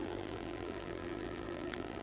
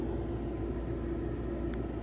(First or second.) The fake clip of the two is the first